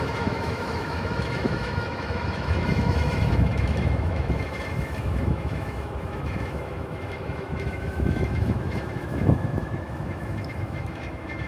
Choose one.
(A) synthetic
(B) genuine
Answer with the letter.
A